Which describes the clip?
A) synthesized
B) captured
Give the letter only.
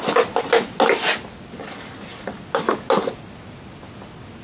B